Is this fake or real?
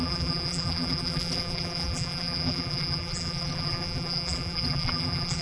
fake